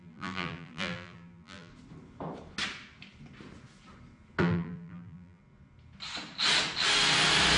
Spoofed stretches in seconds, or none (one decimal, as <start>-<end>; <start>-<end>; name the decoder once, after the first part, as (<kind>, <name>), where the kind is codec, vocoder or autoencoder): 0.0-1.7 (vocoder, BigVGAN v2); 4.4-5.4